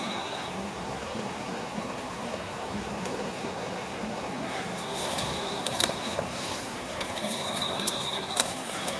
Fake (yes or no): yes